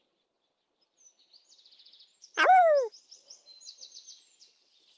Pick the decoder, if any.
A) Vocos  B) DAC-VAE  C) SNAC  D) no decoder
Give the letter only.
D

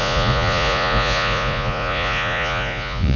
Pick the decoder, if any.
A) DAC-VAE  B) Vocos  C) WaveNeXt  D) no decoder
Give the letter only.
B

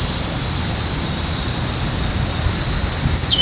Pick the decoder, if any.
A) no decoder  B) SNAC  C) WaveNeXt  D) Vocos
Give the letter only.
A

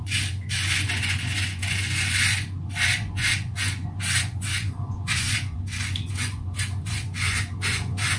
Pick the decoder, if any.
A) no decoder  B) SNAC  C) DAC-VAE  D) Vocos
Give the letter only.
D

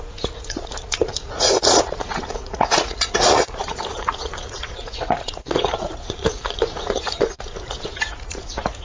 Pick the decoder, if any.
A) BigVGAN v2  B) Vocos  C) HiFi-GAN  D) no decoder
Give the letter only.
B